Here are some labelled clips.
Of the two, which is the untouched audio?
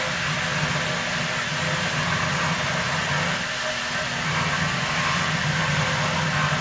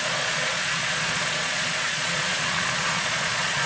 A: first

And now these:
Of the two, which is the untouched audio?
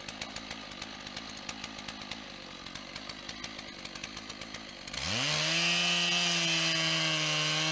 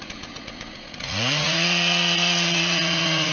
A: first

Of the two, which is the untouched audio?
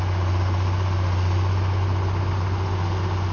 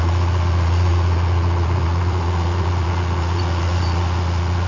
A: first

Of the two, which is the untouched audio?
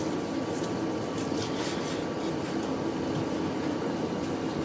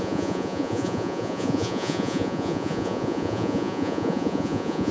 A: first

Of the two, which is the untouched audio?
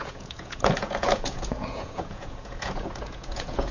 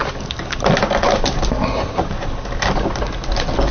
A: second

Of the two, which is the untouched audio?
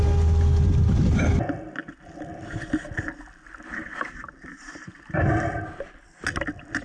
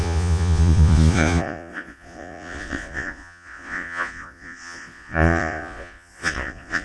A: first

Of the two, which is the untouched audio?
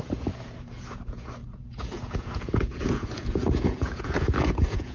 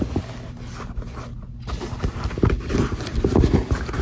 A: second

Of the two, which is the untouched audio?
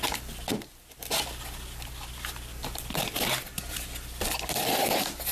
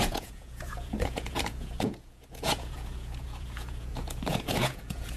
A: first